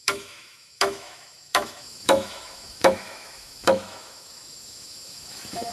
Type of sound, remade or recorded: remade